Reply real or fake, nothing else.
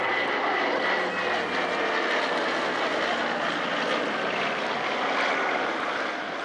real